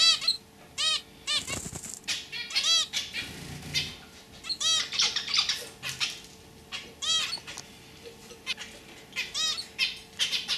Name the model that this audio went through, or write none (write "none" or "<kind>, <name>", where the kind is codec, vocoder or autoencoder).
none